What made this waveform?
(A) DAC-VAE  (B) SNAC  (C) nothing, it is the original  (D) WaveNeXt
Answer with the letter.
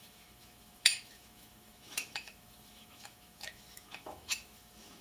A